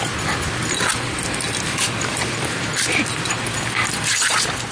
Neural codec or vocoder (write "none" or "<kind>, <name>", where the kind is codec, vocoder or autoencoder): none